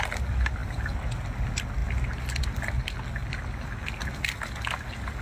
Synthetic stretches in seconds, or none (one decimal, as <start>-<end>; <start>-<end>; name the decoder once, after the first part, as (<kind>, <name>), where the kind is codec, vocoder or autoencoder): 0.6-1.1 (vocoder, BigVGAN v2); 3.2-3.9

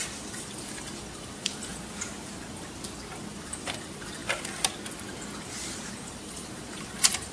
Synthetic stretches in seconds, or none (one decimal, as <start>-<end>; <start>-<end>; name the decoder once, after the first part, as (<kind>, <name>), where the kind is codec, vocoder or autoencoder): 0.0-1.7 (vocoder, BigVGAN v2); 3.3-4.2; 5.9-7.3

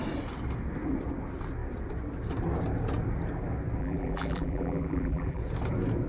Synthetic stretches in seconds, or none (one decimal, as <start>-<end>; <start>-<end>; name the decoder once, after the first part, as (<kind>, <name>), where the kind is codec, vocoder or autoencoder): 3.8-5.4 (vocoder, BigVGAN v2)

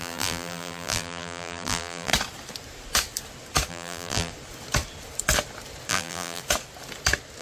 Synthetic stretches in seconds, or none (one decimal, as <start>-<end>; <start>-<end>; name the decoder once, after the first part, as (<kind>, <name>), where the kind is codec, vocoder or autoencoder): 0.0-2.1 (vocoder, BigVGAN v2); 3.7-4.3; 5.9-6.4

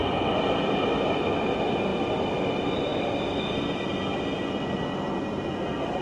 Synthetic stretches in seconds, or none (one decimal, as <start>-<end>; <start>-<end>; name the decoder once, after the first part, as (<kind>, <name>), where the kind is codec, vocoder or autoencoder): none

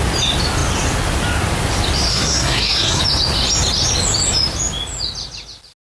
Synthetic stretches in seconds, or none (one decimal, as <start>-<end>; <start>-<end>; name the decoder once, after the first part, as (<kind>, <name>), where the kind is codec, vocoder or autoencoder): 2.1-3.0 (codec, SNAC)

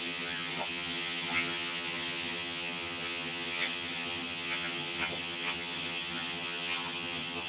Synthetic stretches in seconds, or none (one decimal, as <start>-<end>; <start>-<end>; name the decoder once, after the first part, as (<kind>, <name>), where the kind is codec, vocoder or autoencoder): 0.0-7.5 (vocoder, HiFi-GAN)